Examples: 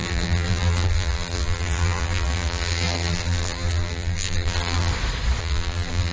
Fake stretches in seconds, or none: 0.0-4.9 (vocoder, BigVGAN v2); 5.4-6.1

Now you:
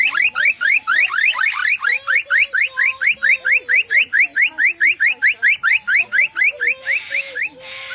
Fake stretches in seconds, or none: 1.6-5.0 (vocoder, BigVGAN v2)